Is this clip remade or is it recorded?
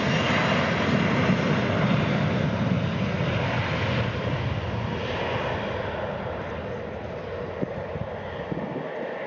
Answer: recorded